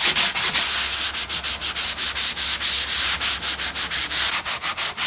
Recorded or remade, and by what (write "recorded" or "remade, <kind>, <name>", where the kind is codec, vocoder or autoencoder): recorded